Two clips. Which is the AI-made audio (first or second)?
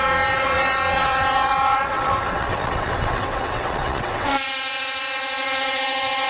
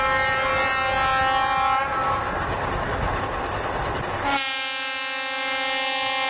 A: first